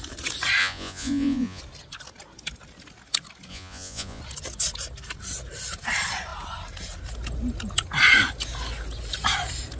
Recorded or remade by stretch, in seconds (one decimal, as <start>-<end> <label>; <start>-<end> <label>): 0.0-0.6 recorded; 0.6-1.6 remade; 1.6-3.5 recorded; 3.5-4.2 remade; 4.2-9.8 recorded